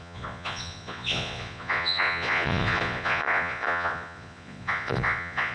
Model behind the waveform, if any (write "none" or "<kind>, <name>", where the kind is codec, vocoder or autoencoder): vocoder, Vocos